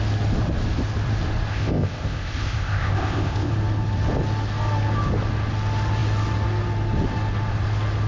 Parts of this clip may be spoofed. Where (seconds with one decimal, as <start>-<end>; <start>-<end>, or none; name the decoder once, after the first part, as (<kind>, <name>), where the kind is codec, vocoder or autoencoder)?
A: 1.5-3.5 (codec, ZipCodec)